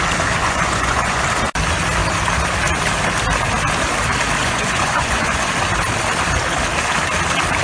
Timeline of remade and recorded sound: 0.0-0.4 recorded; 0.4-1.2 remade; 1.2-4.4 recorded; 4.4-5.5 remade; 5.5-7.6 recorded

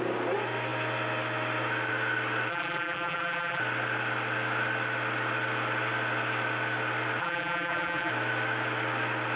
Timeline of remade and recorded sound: 0.0-2.5 recorded; 2.5-3.6 remade; 3.6-7.2 recorded; 7.2-8.1 remade; 8.1-9.4 recorded

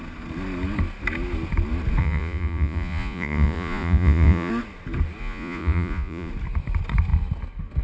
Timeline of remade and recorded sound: 0.0-2.0 recorded; 2.0-4.5 remade; 4.5-5.2 recorded; 5.2-6.3 remade; 6.3-7.8 recorded

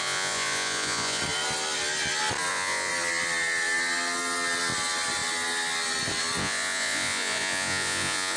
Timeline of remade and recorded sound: 0.0-1.2 remade; 1.2-2.5 recorded; 2.5-2.9 remade; 2.9-6.4 recorded; 6.4-8.4 remade

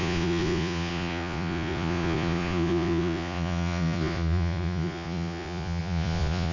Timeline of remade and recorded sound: 0.0-6.5 remade

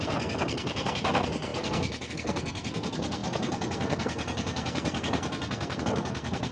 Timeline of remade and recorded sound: 0.0-6.5 remade

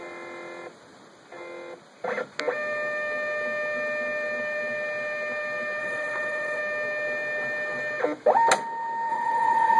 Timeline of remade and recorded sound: 0.0-5.8 recorded; 5.8-6.6 remade; 6.6-9.1 recorded; 9.1-9.8 remade

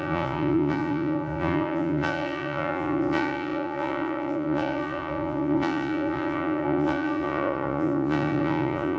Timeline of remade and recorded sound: 0.0-9.0 remade